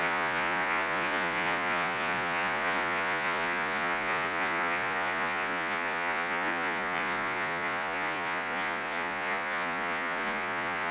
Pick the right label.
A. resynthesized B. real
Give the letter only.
A